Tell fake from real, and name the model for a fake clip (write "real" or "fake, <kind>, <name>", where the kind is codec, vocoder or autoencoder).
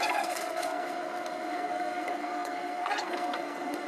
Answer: fake, codec, SNAC